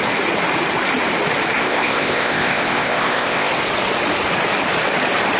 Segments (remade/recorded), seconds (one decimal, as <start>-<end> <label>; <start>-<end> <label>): 0.0-1.6 recorded; 1.6-3.5 remade; 3.5-5.4 recorded